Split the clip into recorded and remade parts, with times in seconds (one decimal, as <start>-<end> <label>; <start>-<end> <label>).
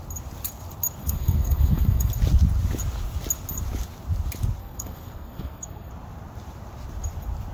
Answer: 0.0-1.0 recorded; 1.0-2.1 remade; 2.1-4.6 recorded; 4.6-5.9 remade; 5.9-7.5 recorded